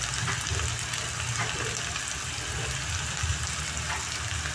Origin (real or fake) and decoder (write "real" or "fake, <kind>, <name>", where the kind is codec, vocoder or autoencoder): real